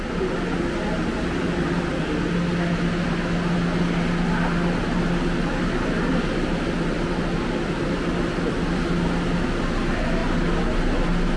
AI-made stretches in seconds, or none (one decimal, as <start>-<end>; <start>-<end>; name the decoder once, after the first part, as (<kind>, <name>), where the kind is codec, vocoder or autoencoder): none

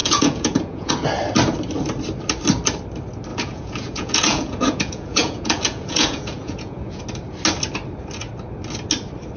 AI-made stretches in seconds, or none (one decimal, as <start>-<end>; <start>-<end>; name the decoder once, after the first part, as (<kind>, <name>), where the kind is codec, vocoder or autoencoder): 0.0-0.9 (vocoder, Vocos); 3.3-7.0

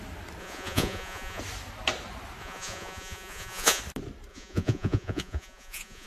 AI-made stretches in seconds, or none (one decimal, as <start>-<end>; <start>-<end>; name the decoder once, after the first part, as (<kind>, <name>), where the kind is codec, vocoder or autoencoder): 0.4-1.4 (vocoder, Vocos); 2.4-3.8; 4.3-6.1

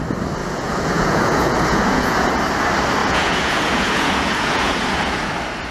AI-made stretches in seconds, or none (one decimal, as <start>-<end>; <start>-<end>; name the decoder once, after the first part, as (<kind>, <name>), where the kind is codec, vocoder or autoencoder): 0.4-2.3 (vocoder, Vocos); 3.0-5.3